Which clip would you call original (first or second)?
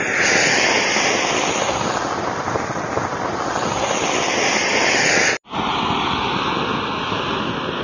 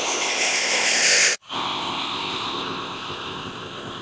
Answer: first